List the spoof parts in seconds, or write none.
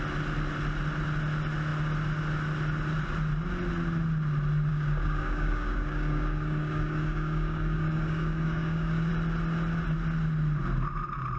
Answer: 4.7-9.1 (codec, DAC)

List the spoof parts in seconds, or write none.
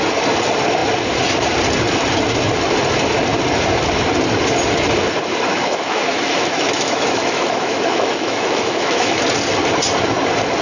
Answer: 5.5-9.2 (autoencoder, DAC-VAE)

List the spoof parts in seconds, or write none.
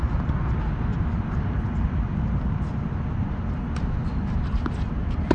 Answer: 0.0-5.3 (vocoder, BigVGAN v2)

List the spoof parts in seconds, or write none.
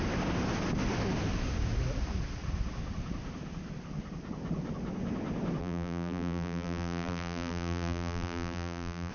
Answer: 5.6-9.1 (vocoder, BigVGAN v2)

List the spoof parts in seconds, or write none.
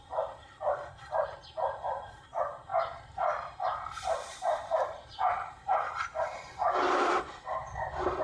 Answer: 0.0-8.2 (vocoder, BigVGAN v2)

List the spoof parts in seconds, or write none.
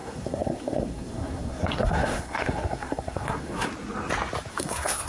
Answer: 0.0-3.7 (codec, SNAC); 4.5-5.1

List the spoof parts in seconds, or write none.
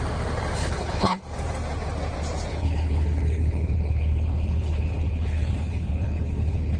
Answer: 0.6-1.2 (codec, HILCodec); 2.5-6.8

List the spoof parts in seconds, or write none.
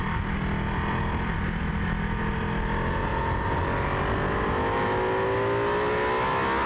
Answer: 0.0-3.1 (vocoder, BigVGAN v2)